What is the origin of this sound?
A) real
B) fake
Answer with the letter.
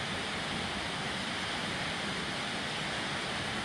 A